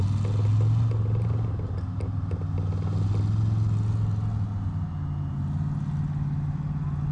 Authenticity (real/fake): real